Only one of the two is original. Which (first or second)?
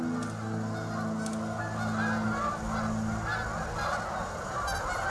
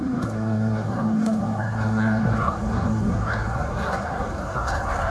first